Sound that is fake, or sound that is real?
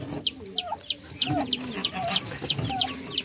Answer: real